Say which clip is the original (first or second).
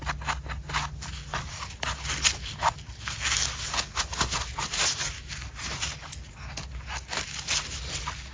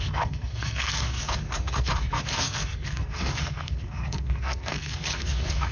first